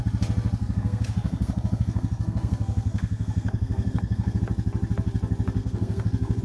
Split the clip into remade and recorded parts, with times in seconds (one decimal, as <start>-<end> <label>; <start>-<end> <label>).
0.0-0.6 recorded; 0.6-4.4 remade; 4.4-5.6 recorded; 5.6-6.4 remade